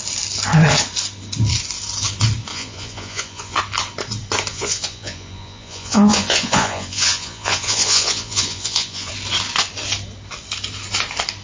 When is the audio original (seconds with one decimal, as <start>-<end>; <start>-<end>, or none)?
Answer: 0.0-2.5; 3.6-4.5; 9.1-11.4